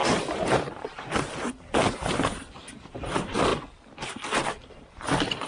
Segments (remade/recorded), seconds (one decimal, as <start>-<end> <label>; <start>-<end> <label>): 0.0-3.5 remade; 3.5-4.7 recorded; 4.7-5.5 remade